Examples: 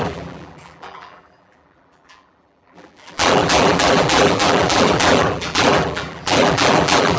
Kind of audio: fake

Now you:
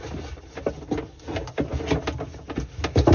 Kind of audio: real